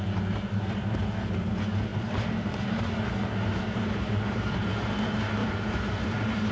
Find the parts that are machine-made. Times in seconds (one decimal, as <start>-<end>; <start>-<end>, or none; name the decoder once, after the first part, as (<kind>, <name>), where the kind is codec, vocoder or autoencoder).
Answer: 0.5-1.0 (vocoder, BigVGAN v2); 1.9-4.7; 5.4-6.5